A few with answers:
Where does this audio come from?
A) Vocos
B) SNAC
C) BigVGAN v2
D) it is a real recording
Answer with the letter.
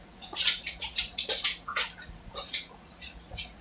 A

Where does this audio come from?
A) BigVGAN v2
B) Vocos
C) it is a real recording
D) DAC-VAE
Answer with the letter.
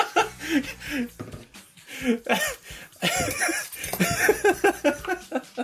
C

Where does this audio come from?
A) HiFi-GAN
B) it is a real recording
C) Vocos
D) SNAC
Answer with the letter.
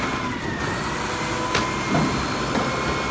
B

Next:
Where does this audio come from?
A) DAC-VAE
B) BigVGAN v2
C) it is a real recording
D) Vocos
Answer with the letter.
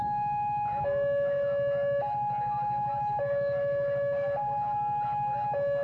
C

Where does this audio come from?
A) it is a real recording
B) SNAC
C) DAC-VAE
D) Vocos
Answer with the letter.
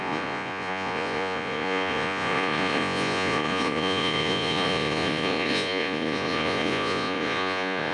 D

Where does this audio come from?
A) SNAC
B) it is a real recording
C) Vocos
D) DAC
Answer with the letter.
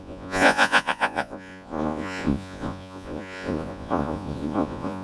C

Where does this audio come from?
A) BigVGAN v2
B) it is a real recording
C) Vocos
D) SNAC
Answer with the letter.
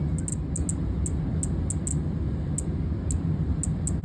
B